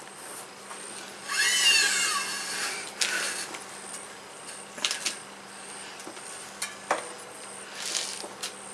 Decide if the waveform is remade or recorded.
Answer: recorded